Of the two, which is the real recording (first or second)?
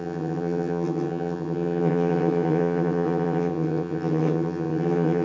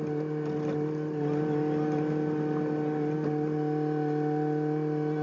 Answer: second